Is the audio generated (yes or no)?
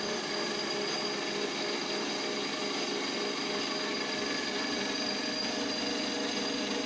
no